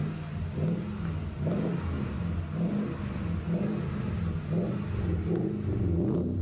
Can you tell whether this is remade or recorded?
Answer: recorded